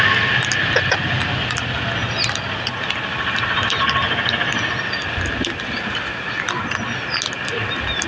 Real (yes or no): yes